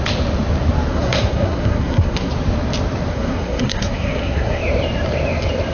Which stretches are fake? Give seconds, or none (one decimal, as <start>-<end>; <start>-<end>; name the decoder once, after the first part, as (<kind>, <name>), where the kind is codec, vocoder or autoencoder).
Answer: 0.9-2.3 (codec, SNAC); 3.1-4.6